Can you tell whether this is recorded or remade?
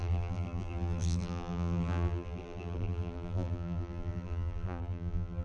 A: remade